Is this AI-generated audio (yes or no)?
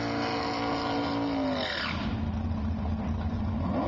no